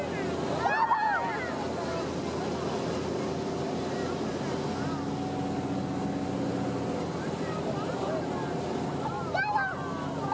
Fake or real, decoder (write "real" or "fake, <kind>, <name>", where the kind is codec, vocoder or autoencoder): real